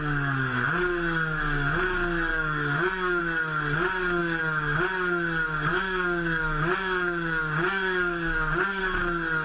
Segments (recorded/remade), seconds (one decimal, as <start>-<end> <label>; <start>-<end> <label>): 0.0-2.3 recorded; 2.3-3.2 remade; 3.2-4.2 recorded; 4.2-4.8 remade; 4.8-5.7 recorded; 5.7-8.8 remade; 8.8-9.4 recorded